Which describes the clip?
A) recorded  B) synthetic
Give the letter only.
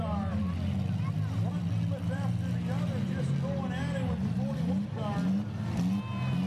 A